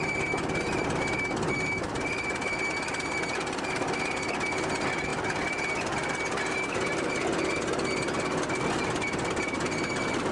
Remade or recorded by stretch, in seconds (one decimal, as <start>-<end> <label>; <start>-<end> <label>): 0.0-10.3 recorded